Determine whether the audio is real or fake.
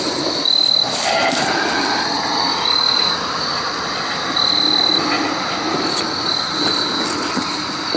real